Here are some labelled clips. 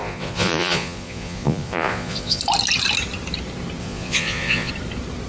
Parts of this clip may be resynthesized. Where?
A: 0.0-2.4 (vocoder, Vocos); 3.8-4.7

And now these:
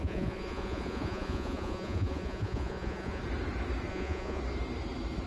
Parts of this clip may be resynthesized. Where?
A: 0.0-3.2 (vocoder, Vocos); 3.9-4.4